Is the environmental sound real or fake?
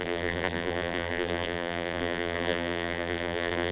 fake